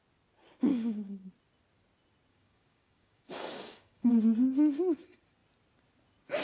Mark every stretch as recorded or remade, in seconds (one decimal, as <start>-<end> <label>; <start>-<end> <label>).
0.0-0.7 recorded; 0.7-1.3 remade; 1.3-2.3 recorded; 2.3-4.1 remade; 4.1-6.4 recorded